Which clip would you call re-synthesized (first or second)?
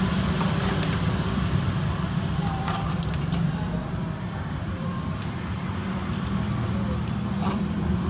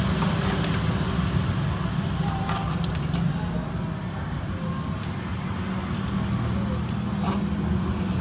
first